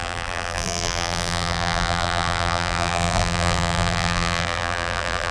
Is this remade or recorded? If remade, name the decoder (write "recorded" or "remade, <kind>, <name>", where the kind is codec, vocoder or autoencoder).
remade, vocoder, BigVGAN v2